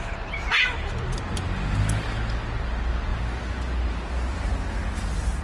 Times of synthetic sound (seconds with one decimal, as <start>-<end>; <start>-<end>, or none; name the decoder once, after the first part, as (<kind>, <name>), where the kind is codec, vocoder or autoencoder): none